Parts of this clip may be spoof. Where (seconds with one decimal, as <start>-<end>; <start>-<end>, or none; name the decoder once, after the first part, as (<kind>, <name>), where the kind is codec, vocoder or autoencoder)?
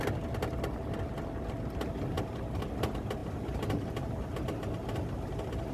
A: none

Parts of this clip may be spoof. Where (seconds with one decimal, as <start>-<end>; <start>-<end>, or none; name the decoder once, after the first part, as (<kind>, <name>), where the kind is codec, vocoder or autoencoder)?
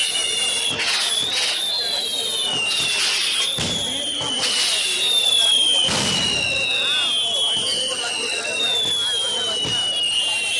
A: none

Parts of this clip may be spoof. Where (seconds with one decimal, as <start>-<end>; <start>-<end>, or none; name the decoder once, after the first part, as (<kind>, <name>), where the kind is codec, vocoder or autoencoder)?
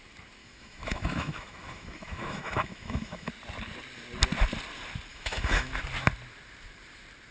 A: 0.4-3.3 (autoencoder, DAC-VAE); 5.1-5.7